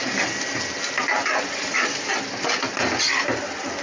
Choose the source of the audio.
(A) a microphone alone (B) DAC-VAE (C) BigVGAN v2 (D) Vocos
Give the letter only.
A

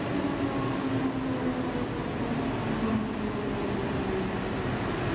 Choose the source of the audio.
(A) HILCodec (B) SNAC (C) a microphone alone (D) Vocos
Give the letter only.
C